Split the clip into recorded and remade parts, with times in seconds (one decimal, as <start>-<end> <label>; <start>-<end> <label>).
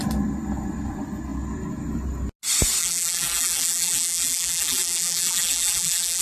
0.0-2.8 recorded; 2.8-6.2 remade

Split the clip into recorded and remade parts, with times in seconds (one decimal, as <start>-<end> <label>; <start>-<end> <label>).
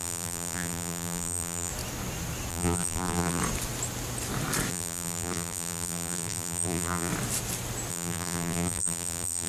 0.0-1.7 remade; 1.7-2.5 recorded; 2.5-3.4 remade; 3.4-4.7 recorded; 4.7-7.1 remade; 7.1-7.9 recorded; 7.9-9.5 remade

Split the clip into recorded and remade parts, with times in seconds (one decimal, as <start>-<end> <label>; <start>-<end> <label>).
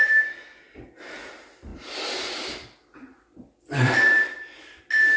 0.0-1.7 recorded; 1.7-4.8 remade; 4.8-5.2 recorded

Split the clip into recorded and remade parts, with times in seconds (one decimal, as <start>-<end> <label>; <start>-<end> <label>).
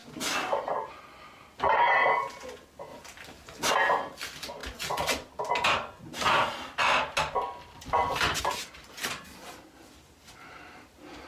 0.0-0.9 remade; 0.9-2.9 recorded; 2.9-3.7 remade; 3.7-11.3 recorded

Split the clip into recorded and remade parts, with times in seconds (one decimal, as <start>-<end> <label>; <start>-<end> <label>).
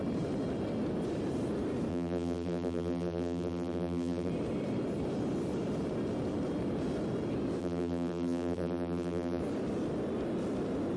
0.0-1.9 recorded; 1.9-4.3 remade; 4.3-7.6 recorded; 7.6-9.4 remade; 9.4-11.0 recorded